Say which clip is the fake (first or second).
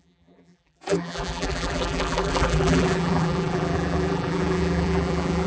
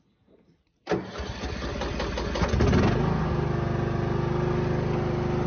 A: first